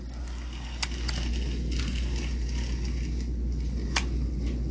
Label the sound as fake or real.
real